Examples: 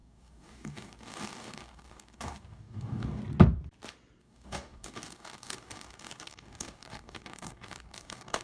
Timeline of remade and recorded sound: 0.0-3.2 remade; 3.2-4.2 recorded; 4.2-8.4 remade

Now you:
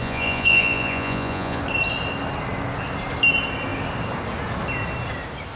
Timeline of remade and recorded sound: 0.0-1.6 remade; 1.6-5.6 recorded

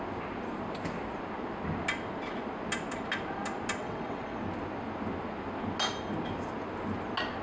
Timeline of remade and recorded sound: 0.0-3.8 recorded; 3.8-4.4 remade; 4.4-7.4 recorded

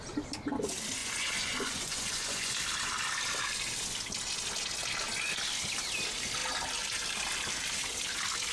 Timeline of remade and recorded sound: 0.0-1.0 recorded; 1.0-2.5 remade; 2.5-8.5 recorded